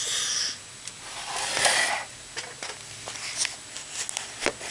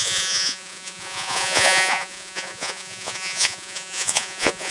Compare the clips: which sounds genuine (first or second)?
first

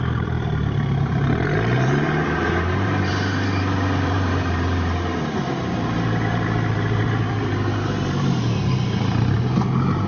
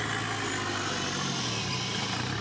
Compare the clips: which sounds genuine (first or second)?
second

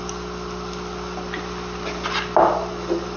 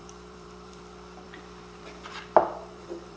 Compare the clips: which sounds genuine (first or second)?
first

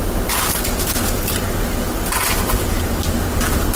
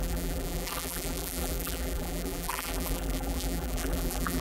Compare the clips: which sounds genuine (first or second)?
first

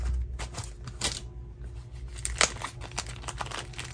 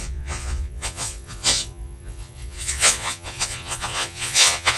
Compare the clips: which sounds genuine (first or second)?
first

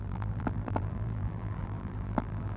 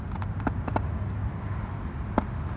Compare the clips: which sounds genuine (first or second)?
second